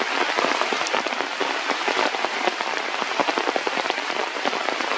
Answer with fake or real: real